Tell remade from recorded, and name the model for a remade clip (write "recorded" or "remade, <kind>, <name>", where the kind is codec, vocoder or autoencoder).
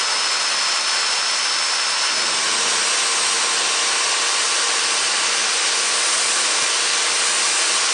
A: recorded